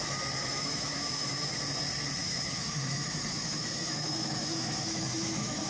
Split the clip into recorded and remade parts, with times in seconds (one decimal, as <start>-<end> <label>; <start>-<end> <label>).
0.0-0.4 recorded; 0.4-1.6 remade; 1.6-2.2 recorded; 2.2-5.7 remade